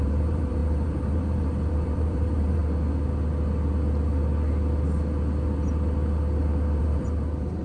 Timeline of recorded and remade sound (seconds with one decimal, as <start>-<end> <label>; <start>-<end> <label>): 0.0-2.6 remade; 2.6-6.8 recorded; 6.8-7.6 remade

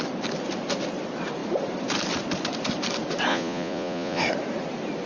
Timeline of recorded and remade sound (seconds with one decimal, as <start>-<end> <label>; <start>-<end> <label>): 0.0-3.3 recorded; 3.3-4.2 remade; 4.2-5.1 recorded

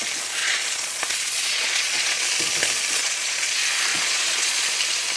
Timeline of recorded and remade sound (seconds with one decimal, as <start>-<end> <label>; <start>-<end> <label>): 0.0-0.4 recorded; 0.4-2.2 remade; 2.2-3.0 recorded; 3.0-3.5 remade; 3.5-3.9 recorded; 3.9-4.7 remade; 4.7-5.2 recorded

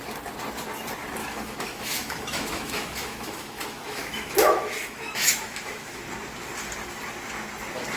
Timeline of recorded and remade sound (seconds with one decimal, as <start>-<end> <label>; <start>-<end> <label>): 0.0-1.2 recorded; 1.2-6.0 remade; 6.0-8.0 recorded

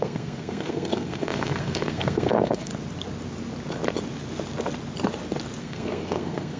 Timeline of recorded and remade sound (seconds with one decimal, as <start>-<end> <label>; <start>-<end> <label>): 0.0-2.7 remade; 2.7-5.6 recorded; 5.6-6.6 remade

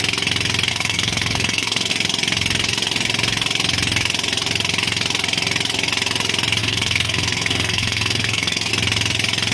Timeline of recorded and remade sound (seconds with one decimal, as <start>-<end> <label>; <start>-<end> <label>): 0.0-0.7 recorded; 0.7-1.9 remade; 1.9-6.6 recorded; 6.6-8.7 remade; 8.7-9.5 recorded

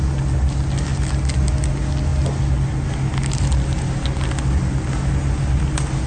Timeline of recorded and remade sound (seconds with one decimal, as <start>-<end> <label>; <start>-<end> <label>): 0.0-6.1 recorded

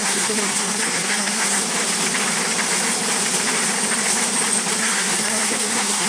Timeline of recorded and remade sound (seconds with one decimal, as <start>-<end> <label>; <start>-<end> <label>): 0.0-1.6 remade; 1.6-4.8 recorded; 4.8-6.1 remade